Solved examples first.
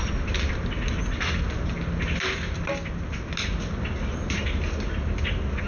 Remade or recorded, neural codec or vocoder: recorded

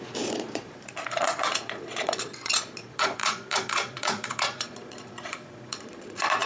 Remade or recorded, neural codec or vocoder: remade, vocoder, Vocos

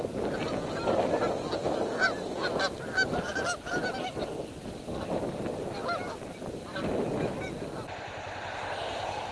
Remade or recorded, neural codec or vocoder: recorded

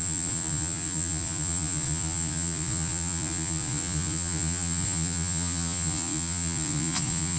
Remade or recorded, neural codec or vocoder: remade, vocoder, Vocos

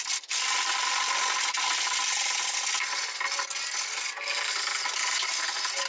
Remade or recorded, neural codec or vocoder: recorded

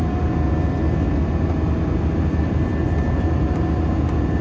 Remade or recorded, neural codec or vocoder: recorded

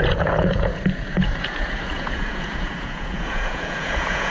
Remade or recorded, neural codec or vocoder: remade, vocoder, Vocos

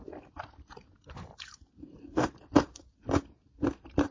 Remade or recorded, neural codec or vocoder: recorded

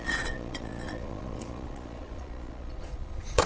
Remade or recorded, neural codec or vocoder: remade, vocoder, Vocos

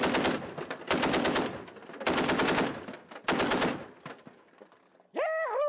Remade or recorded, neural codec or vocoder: recorded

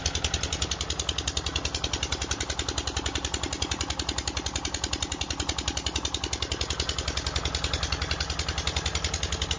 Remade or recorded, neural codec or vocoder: recorded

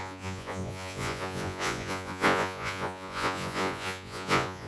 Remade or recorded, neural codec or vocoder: remade, vocoder, Vocos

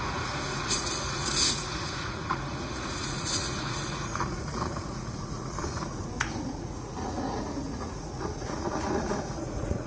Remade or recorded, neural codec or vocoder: remade, vocoder, Vocos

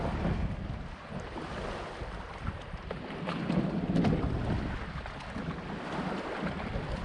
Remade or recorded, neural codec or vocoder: recorded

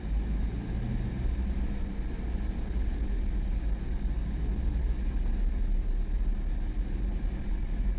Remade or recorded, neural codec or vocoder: recorded